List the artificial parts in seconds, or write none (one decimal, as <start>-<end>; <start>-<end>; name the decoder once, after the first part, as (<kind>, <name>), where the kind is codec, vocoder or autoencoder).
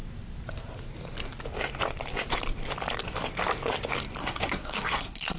4.2-5.4 (codec, SNAC)